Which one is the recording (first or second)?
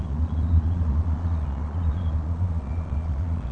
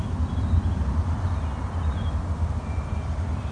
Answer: second